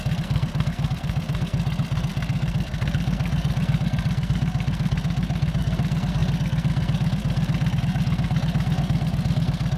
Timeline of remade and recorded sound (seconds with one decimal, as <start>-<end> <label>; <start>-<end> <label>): 0.0-9.8 remade